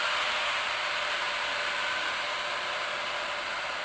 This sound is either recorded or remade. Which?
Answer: recorded